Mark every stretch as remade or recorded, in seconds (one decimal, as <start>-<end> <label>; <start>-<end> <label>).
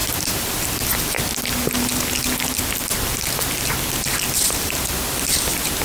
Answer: 0.0-5.8 recorded